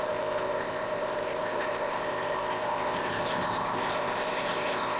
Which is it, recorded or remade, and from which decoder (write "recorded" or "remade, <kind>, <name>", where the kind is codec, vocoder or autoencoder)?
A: remade, codec, ZipCodec